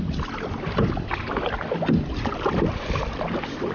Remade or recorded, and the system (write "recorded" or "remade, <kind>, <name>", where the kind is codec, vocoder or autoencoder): recorded